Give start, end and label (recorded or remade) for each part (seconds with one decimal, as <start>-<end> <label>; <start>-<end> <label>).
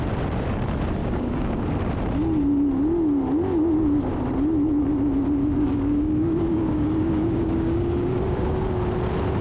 0.0-1.0 recorded; 1.0-1.6 remade; 1.6-5.4 recorded; 5.4-8.6 remade; 8.6-9.4 recorded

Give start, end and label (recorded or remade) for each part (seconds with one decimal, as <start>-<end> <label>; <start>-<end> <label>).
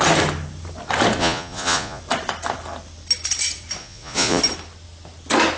0.0-1.2 recorded; 1.2-2.0 remade; 2.0-3.8 recorded; 3.8-4.4 remade; 4.4-5.6 recorded